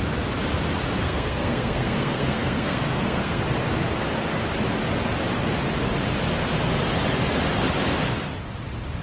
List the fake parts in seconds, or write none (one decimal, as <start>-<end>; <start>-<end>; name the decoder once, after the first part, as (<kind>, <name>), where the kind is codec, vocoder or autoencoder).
1.0-3.4 (codec, SNAC)